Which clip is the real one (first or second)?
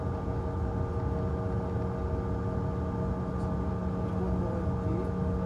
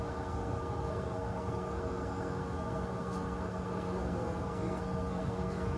first